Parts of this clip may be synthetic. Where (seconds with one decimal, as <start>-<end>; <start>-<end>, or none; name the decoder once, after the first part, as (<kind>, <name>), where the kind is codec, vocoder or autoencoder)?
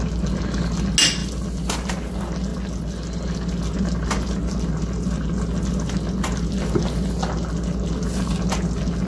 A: none